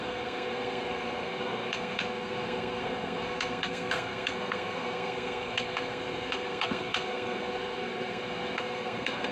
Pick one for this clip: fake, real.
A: fake